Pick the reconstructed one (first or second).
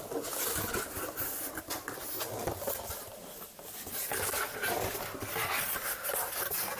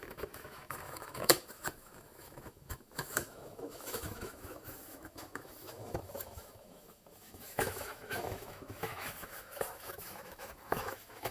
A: second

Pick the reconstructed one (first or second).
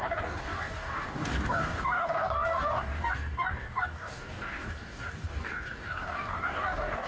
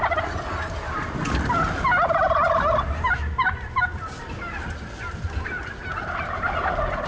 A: first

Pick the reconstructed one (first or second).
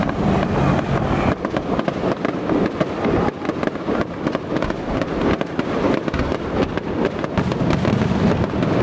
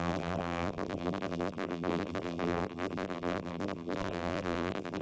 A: second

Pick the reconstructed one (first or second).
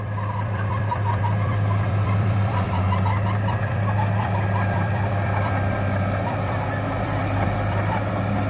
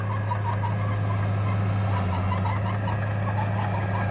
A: first